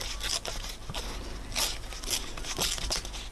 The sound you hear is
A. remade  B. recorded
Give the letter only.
B